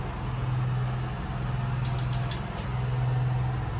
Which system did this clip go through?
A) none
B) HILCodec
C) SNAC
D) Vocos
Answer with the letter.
A